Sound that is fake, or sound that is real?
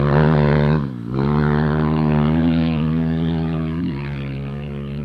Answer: fake